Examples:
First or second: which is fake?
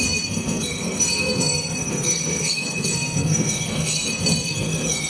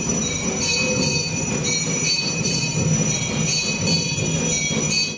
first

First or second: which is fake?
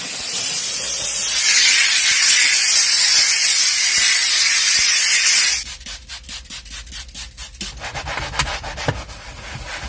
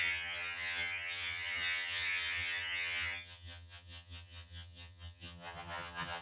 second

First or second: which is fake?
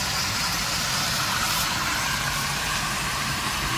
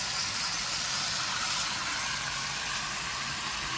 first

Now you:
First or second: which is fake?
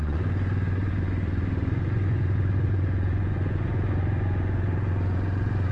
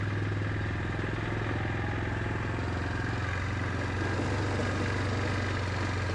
first